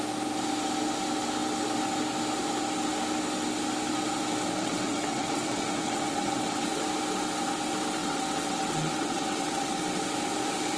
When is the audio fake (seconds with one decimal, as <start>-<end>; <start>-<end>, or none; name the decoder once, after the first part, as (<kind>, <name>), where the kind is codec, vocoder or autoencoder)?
4.6-6.8 (vocoder, WaveNeXt); 8.0-9.8